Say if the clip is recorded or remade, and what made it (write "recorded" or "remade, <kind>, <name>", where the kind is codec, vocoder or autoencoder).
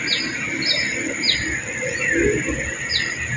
recorded